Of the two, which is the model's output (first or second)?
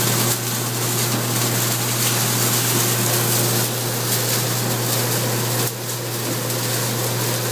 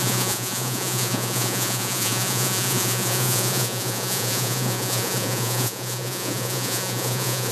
second